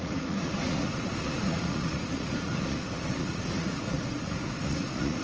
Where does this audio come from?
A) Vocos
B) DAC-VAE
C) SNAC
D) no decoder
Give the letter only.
A